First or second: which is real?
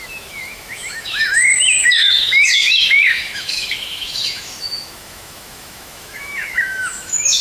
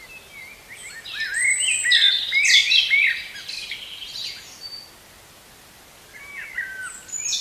second